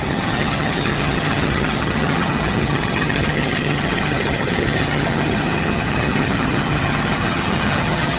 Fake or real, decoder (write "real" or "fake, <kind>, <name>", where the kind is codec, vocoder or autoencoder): fake, vocoder, HiFi-GAN